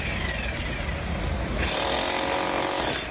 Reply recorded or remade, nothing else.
recorded